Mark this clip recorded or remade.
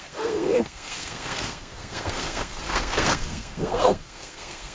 remade